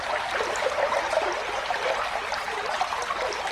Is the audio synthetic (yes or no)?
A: no